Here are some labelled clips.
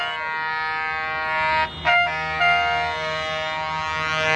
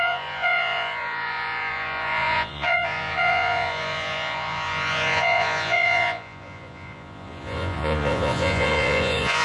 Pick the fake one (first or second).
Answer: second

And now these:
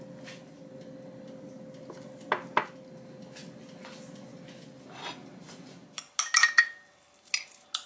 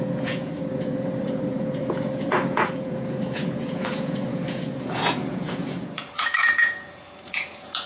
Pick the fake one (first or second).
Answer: second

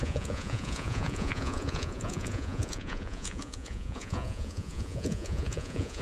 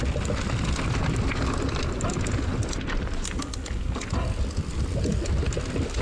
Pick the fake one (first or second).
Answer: first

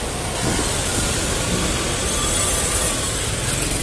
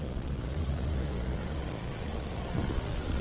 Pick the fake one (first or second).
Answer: second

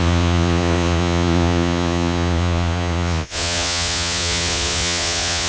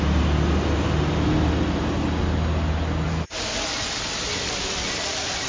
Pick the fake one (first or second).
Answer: first